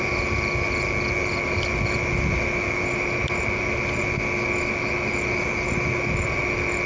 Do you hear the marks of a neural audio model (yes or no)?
no